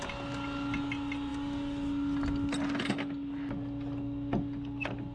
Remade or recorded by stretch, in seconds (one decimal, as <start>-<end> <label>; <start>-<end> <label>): 0.0-5.1 recorded

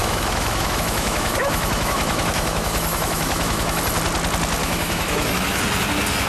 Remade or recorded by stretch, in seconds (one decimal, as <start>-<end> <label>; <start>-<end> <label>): 0.0-3.8 remade; 3.8-4.6 recorded; 4.6-5.6 remade; 5.6-6.3 recorded

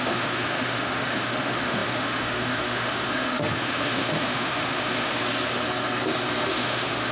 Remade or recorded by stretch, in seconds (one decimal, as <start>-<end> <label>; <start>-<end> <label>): 0.0-5.2 remade; 5.2-6.5 recorded; 6.5-7.1 remade

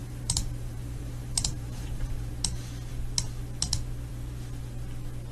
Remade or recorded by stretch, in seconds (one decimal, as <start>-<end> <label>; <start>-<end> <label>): 0.0-2.3 remade; 2.3-5.3 recorded

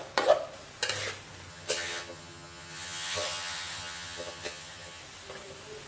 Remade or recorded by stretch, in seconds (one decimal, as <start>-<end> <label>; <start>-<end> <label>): 0.0-1.5 recorded; 1.5-5.0 remade; 5.0-5.9 recorded